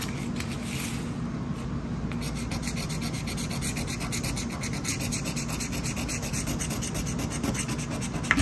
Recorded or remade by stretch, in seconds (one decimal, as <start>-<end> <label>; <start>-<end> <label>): 0.0-8.4 recorded